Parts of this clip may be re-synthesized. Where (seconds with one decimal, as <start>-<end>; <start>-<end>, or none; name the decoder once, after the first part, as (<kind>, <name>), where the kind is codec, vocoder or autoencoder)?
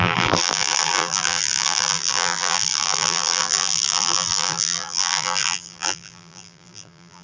0.0-7.2 (vocoder, BigVGAN v2)